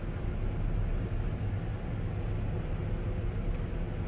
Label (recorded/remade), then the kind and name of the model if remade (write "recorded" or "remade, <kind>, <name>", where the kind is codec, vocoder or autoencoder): recorded